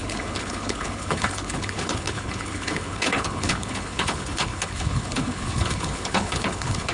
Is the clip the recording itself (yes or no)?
no